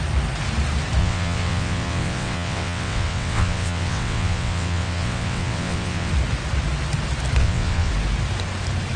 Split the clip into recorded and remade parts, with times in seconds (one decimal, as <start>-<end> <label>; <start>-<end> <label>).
0.0-1.0 recorded; 1.0-6.1 remade; 6.1-7.4 recorded; 7.4-7.9 remade; 7.9-9.0 recorded